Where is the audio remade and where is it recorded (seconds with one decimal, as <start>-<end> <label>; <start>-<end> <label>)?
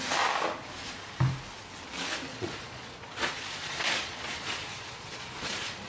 0.0-2.3 recorded; 2.3-5.9 remade